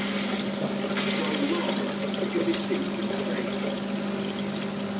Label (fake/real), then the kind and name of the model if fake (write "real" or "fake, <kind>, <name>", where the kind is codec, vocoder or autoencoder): real